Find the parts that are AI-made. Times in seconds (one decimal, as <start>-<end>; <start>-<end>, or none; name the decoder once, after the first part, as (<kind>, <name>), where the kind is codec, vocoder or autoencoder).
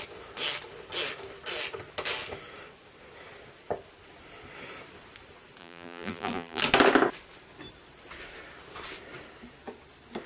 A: 5.6-6.6 (vocoder, BigVGAN v2)